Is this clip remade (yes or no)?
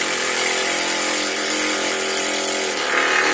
no